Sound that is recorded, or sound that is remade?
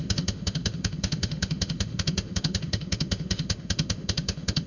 remade